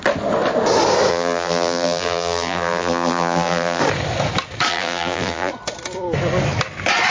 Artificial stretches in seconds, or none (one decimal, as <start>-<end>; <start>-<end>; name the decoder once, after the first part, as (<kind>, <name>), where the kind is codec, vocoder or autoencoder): 1.1-3.8 (vocoder, BigVGAN v2); 4.7-5.5

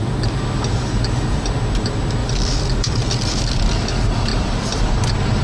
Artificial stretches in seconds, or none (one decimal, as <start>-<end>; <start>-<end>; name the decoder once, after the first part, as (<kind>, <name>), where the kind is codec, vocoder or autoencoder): 2.2-3.4 (vocoder, BigVGAN v2); 4.3-4.8

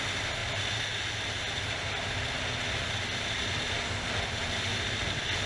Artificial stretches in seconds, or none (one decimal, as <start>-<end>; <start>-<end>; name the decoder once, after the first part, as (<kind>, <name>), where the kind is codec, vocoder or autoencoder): none

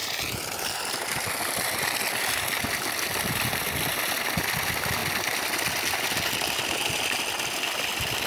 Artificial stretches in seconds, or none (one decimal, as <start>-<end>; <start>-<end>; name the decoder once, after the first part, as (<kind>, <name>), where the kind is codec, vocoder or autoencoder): none

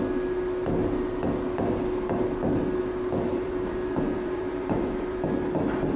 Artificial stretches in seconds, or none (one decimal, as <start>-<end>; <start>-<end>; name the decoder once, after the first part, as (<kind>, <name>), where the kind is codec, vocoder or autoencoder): 3.3-5.3 (vocoder, BigVGAN v2)

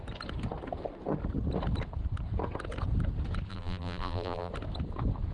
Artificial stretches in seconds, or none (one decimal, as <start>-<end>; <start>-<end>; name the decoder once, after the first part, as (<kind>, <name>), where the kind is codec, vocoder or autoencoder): 3.5-4.5 (vocoder, BigVGAN v2)

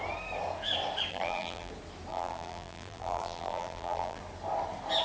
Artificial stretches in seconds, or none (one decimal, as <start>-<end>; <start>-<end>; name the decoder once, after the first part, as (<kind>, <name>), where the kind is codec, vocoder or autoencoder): 1.1-1.7 (vocoder, BigVGAN v2); 2.1-4.2